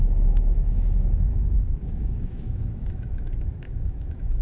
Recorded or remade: remade